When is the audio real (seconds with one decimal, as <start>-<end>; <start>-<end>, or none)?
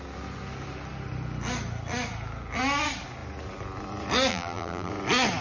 0.0-4.3; 4.9-5.4